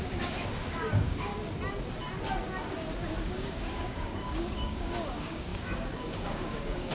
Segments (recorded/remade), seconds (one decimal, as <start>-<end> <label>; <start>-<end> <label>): 0.0-1.3 remade; 1.3-3.2 recorded; 3.2-6.9 remade